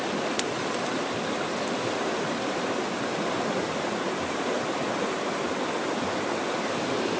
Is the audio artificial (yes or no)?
no